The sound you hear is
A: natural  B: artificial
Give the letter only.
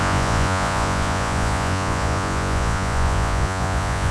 B